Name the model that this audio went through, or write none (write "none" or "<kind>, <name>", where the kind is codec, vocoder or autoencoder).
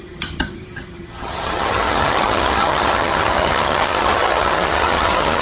vocoder, HiFi-GAN